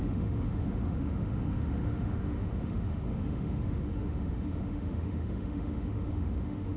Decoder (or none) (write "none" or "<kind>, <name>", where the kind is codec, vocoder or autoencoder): autoencoder, DAC-VAE